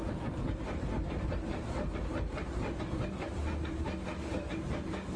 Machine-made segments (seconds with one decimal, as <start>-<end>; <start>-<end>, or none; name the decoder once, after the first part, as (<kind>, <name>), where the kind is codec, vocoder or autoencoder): 0.0-3.1 (vocoder, BigVGAN v2)